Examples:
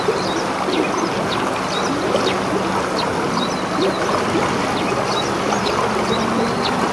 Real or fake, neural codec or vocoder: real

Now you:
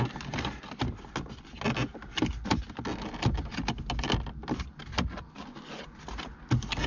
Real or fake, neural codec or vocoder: real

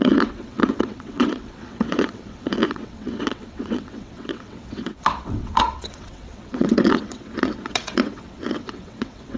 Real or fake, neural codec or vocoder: fake, vocoder, WaveNeXt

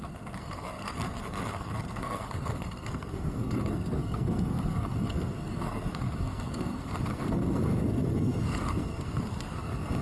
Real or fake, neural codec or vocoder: fake, codec, SNAC